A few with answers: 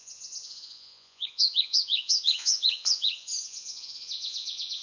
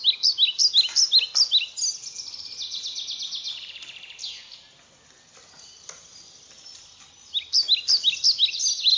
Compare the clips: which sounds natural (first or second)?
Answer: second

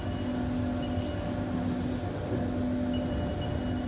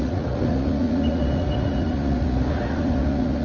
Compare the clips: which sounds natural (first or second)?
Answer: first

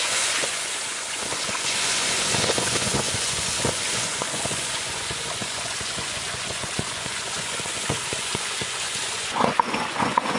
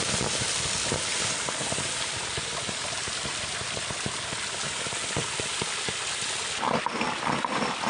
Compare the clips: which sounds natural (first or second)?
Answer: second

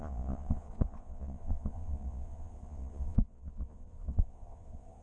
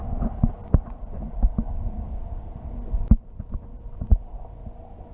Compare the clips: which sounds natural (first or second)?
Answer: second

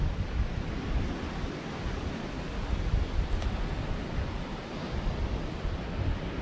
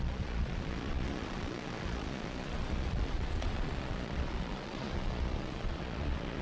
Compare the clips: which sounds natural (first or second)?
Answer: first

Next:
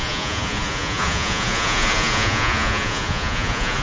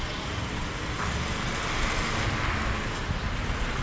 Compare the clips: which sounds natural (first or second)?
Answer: second